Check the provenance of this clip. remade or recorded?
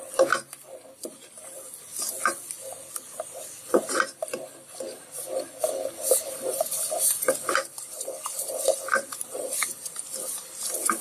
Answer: recorded